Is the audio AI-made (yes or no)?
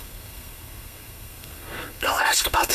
yes